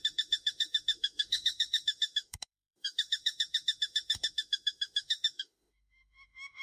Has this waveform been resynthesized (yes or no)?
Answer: yes